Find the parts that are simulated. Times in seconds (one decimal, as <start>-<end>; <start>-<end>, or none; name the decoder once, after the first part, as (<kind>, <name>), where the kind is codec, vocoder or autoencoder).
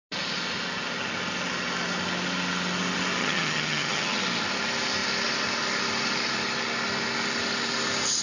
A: 3.2-4.2 (vocoder, HiFi-GAN)